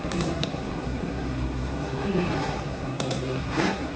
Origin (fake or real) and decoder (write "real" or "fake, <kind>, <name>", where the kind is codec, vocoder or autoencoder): fake, codec, SNAC